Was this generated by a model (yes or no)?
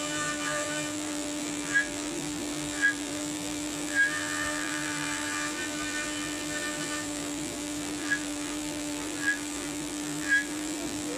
yes